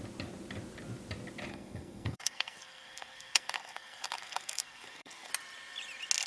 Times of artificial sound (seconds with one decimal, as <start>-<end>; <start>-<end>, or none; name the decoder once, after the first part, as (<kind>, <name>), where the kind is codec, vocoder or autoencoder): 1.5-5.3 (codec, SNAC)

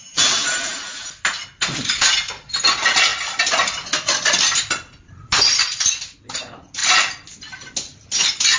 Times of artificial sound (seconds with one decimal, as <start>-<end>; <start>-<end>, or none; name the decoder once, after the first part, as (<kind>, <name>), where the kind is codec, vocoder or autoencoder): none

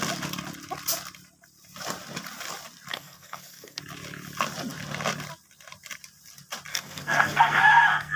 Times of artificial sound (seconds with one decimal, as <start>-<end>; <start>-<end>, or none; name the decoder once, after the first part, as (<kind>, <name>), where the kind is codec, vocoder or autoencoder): 2.9-3.8 (codec, SNAC); 6.7-8.2

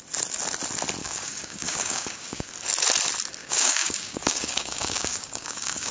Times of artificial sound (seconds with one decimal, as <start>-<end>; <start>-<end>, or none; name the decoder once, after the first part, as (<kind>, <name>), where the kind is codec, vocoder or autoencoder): 1.0-2.5 (codec, DAC); 3.4-5.9